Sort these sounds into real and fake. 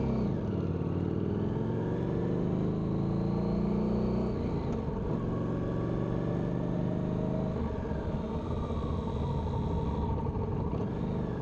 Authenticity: real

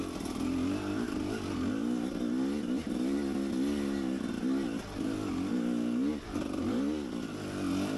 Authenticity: real